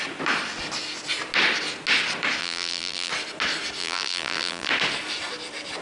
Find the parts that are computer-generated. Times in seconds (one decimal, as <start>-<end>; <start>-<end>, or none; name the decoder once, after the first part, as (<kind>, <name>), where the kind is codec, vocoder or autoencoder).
2.4-3.1 (vocoder, BigVGAN v2); 3.8-4.7